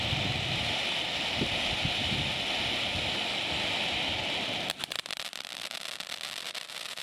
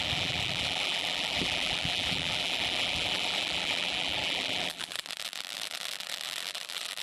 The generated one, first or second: second